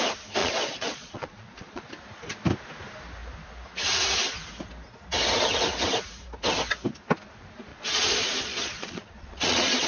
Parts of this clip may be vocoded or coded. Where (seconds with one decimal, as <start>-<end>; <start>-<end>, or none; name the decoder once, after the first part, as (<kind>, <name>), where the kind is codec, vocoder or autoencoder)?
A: 0.4-1.9 (vocoder, Vocos); 7.7-9.9